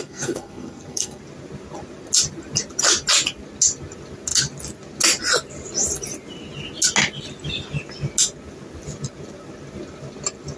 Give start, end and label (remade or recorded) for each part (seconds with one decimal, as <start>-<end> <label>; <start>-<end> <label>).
0.0-1.2 remade; 1.2-10.6 recorded